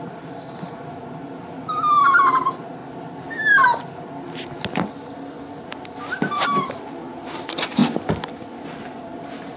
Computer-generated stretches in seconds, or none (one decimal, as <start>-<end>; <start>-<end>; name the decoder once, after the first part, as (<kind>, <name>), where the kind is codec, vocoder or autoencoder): none